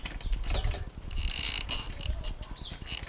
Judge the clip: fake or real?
fake